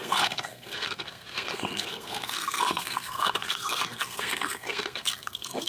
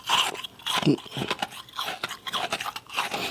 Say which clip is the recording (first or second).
second